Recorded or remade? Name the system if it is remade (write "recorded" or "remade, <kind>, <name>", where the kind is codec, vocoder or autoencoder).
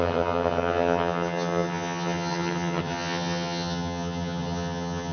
remade, vocoder, HiFi-GAN